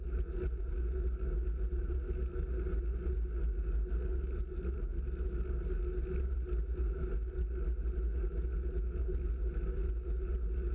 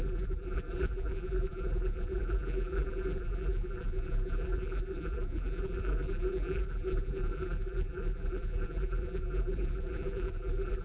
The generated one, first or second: second